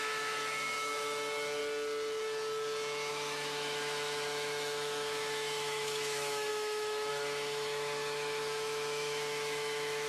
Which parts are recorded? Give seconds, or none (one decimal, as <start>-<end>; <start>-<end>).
1.6-3.1